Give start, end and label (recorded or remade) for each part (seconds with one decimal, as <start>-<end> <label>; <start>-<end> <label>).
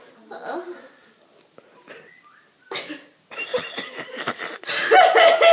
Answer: 0.0-3.5 recorded; 3.5-4.6 remade; 4.6-5.5 recorded